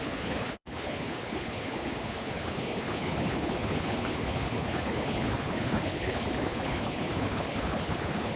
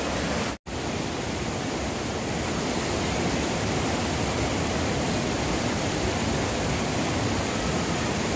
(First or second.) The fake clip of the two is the first